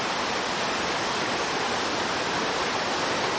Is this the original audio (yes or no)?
yes